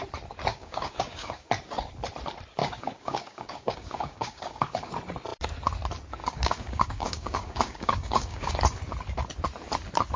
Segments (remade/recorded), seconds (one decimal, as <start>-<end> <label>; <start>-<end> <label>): 0.0-0.5 recorded; 0.5-1.5 remade; 1.5-2.6 recorded; 2.6-4.9 remade; 4.9-6.2 recorded; 6.2-8.5 remade; 8.5-10.2 recorded